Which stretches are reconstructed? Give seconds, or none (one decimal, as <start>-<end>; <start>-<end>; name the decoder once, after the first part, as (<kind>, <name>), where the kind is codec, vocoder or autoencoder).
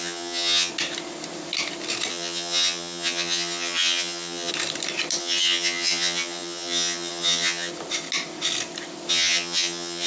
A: 0.0-0.7 (vocoder, HiFi-GAN); 2.1-4.5; 5.2-7.7; 9.1-10.1